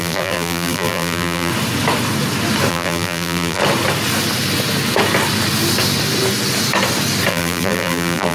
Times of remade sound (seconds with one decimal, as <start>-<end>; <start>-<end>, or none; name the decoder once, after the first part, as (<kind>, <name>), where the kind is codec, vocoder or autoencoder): 0.0-1.5 (vocoder, BigVGAN v2); 2.7-3.6; 7.3-8.3